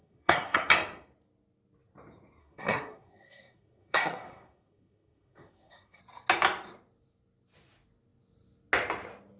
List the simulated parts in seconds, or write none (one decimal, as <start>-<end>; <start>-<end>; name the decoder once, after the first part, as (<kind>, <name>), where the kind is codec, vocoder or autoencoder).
0.0-0.7 (codec, SNAC); 2.4-6.0